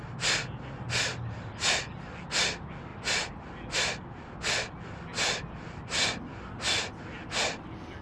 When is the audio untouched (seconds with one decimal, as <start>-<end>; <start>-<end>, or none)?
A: 0.0-8.0